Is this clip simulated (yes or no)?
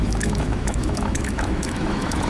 yes